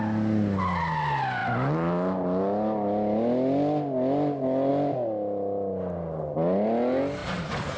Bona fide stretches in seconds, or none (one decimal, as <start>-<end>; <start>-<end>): 0.0-7.2